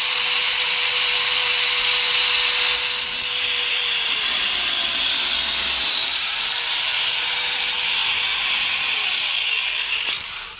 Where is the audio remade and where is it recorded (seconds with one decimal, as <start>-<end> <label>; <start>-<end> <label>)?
0.0-1.4 remade; 1.4-3.7 recorded; 3.7-4.9 remade; 4.9-5.7 recorded; 5.7-8.0 remade; 8.0-9.6 recorded; 9.6-10.6 remade